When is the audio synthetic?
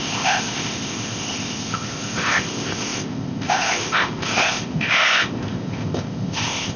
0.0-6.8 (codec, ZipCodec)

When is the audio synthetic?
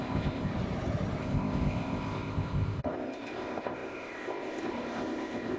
0.0-0.5 (codec, ZipCodec); 1.2-5.6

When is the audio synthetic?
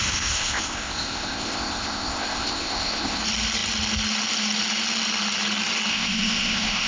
0.0-3.2 (codec, ZipCodec); 5.9-6.9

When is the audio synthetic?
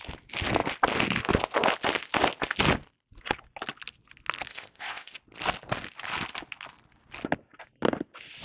4.5-5.2 (codec, ZipCodec)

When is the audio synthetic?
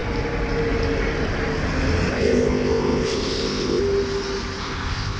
2.1-3.8 (codec, ZipCodec); 4.6-5.2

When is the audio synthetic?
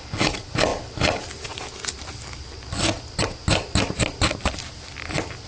none